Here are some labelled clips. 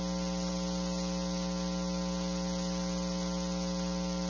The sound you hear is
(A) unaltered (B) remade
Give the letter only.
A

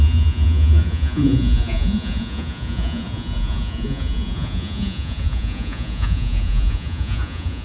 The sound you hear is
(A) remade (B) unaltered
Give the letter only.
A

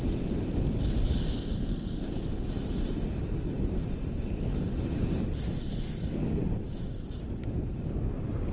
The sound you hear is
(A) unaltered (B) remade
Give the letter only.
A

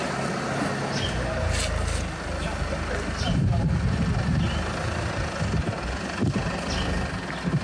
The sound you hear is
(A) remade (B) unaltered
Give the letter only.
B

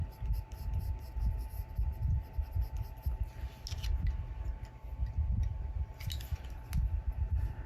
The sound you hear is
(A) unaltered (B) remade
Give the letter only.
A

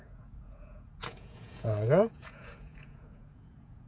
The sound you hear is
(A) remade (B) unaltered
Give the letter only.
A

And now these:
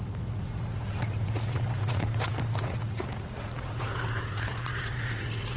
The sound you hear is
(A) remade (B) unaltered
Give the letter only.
A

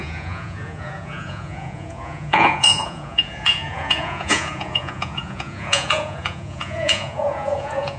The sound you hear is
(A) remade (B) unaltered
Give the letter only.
A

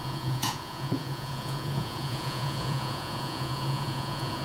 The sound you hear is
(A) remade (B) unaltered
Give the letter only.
A